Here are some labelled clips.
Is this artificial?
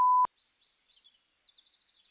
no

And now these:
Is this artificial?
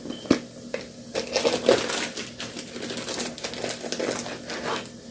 no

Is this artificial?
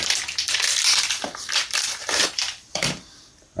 yes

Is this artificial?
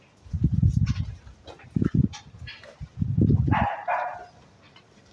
yes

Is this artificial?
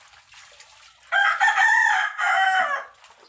no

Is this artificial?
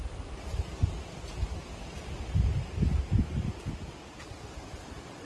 no